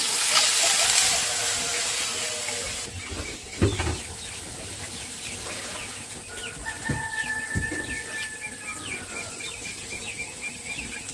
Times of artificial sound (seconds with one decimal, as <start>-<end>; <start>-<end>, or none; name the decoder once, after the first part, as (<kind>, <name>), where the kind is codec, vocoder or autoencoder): 6.6-8.1 (vocoder, Vocos); 8.7-9.4